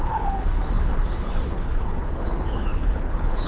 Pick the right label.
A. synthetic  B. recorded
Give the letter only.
A